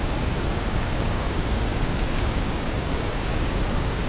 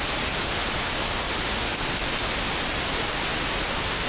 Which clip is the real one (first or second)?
second